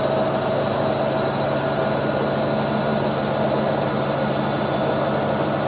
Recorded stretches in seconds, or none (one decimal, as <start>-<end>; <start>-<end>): 0.0-5.7